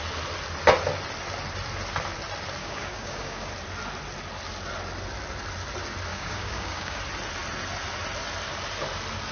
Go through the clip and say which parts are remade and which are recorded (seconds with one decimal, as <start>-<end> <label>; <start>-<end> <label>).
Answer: 0.0-2.6 recorded; 2.6-3.5 remade; 3.5-6.1 recorded; 6.1-7.0 remade; 7.0-9.3 recorded

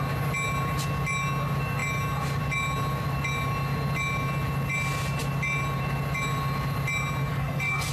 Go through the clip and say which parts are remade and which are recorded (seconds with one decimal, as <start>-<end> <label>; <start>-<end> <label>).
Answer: 0.0-7.3 recorded; 7.3-7.9 remade

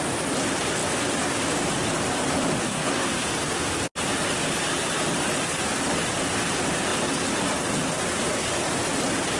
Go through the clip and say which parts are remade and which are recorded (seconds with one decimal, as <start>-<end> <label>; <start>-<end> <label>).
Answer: 0.0-2.6 recorded; 2.6-3.1 remade; 3.1-9.4 recorded

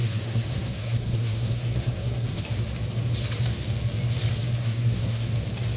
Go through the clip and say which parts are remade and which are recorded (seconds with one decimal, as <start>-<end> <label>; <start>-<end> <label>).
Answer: 0.0-2.4 remade; 2.4-4.6 recorded; 4.6-5.3 remade; 5.3-5.8 recorded

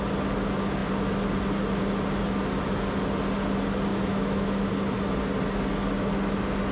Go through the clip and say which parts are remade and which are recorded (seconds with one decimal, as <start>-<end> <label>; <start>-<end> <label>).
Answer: 0.0-3.9 recorded; 3.9-4.7 remade; 4.7-6.7 recorded

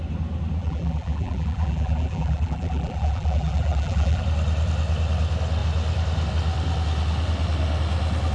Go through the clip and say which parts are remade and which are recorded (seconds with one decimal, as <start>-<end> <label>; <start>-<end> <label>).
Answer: 0.0-0.6 recorded; 0.6-4.2 remade; 4.2-8.3 recorded

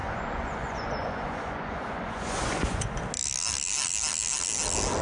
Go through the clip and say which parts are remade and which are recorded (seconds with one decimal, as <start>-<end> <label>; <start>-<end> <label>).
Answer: 0.0-3.0 remade; 3.0-5.0 recorded

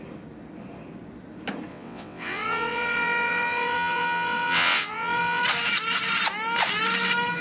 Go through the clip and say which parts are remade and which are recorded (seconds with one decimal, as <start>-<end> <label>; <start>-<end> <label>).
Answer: 0.0-1.7 recorded; 1.7-5.4 remade; 5.4-7.4 recorded